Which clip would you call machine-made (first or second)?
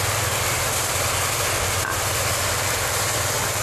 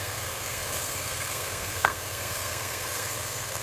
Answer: second